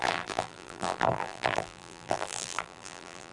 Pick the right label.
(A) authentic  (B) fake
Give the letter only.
B